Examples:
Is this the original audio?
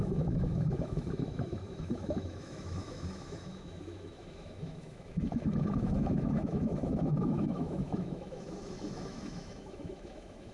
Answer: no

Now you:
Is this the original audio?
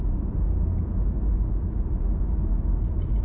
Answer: yes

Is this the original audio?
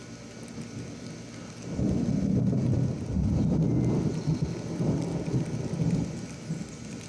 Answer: yes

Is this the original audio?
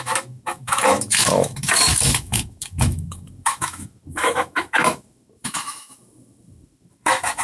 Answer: no